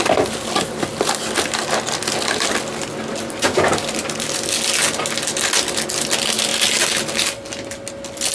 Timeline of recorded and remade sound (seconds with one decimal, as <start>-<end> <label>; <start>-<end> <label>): 0.0-8.3 recorded